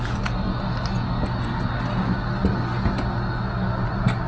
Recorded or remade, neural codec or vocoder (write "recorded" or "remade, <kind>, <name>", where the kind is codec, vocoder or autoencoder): recorded